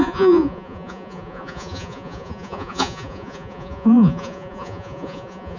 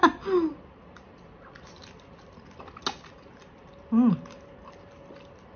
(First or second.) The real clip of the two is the second